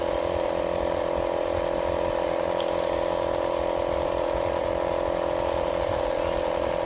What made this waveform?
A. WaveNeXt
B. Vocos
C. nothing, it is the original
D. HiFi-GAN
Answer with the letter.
C